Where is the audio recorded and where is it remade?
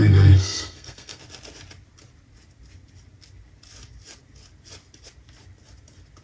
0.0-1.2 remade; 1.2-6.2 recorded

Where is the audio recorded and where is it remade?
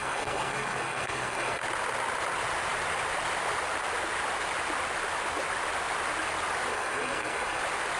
0.0-1.6 remade; 1.6-6.7 recorded; 6.7-7.6 remade; 7.6-8.0 recorded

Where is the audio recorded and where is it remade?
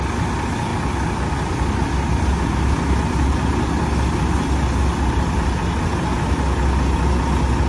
0.0-7.7 recorded